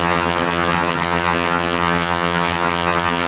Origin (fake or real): fake